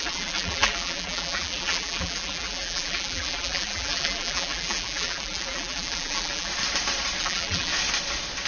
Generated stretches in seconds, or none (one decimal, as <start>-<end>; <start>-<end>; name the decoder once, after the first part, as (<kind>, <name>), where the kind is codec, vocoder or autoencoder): 0.0-6.5 (vocoder, BigVGAN v2); 7.2-7.7